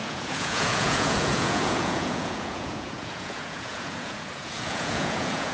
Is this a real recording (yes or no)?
no